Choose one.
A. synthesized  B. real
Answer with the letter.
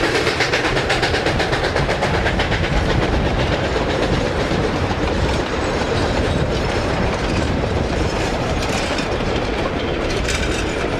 A